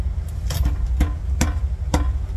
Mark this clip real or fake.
real